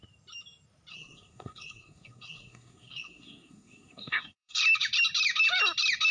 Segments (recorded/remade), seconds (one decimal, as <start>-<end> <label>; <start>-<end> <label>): 0.0-0.9 recorded; 0.9-4.6 remade; 4.6-6.1 recorded

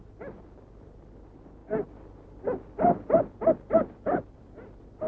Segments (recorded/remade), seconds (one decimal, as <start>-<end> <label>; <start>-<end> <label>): 0.0-5.1 recorded

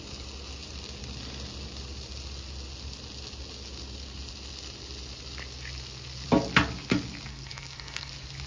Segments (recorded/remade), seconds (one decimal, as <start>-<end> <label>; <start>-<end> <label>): 0.0-7.3 recorded; 7.3-8.1 remade; 8.1-8.5 recorded

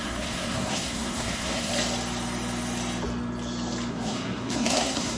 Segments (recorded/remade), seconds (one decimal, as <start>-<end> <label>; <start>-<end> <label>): 0.0-1.7 remade; 1.7-3.9 recorded; 3.9-5.2 remade

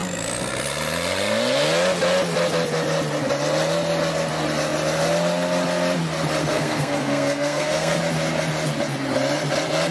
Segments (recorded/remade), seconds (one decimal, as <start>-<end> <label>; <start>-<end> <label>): 0.0-6.4 recorded; 6.4-8.0 remade; 8.0-9.9 recorded

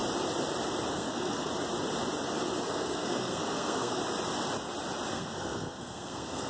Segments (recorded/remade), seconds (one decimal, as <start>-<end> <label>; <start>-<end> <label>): 0.0-0.9 recorded; 0.9-1.5 remade; 1.5-2.7 recorded; 2.7-4.0 remade; 4.0-5.1 recorded; 5.1-6.5 remade